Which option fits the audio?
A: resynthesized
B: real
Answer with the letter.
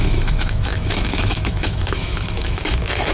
A